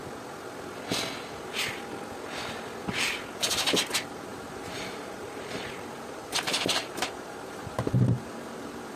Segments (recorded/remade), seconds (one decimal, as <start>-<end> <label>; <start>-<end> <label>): 0.0-3.3 recorded; 3.3-9.0 remade